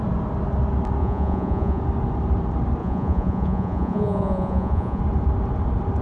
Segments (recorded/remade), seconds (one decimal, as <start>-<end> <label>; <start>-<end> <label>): 0.0-1.0 recorded; 1.0-1.8 remade; 1.8-2.8 recorded; 2.8-5.0 remade; 5.0-6.0 recorded